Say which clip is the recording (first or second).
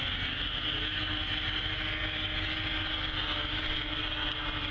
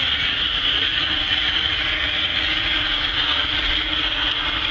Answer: first